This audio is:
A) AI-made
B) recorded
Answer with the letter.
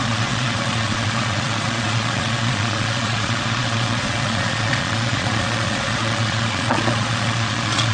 A